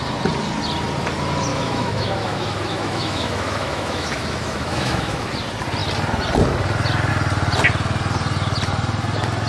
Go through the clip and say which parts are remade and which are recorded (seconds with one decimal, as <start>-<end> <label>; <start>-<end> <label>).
0.0-1.5 recorded; 1.5-5.3 remade; 5.3-9.5 recorded